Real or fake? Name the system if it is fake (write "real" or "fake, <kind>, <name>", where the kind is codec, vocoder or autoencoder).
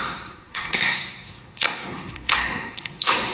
fake, codec, SNAC